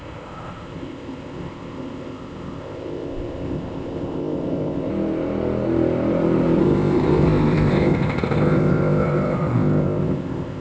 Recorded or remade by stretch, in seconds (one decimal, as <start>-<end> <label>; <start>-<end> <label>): 0.0-4.9 remade; 4.9-6.6 recorded; 6.6-10.6 remade